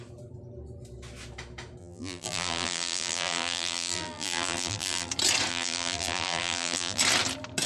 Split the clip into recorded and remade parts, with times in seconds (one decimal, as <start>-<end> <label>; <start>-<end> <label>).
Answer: 0.0-1.8 recorded; 1.8-5.1 remade; 5.1-5.5 recorded; 5.5-7.0 remade; 7.0-7.7 recorded